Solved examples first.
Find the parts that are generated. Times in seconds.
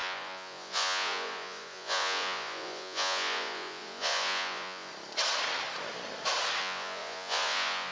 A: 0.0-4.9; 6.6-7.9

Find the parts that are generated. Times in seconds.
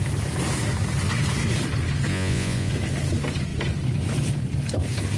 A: 2.1-2.7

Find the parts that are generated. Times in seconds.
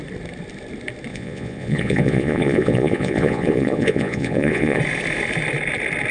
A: 1.1-4.8